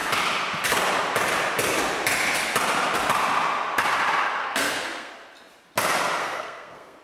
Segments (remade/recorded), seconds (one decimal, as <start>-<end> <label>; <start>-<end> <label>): 0.0-4.4 recorded; 4.4-5.1 remade; 5.1-6.2 recorded; 6.2-7.0 remade